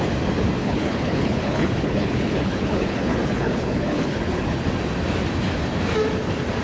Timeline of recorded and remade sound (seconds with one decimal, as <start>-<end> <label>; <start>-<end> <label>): 0.0-0.6 recorded; 0.6-4.6 remade; 4.6-6.6 recorded